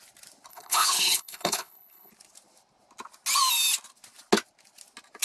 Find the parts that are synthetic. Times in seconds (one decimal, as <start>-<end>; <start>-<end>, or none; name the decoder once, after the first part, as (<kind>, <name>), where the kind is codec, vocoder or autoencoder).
0.5-2.1 (codec, HILCodec)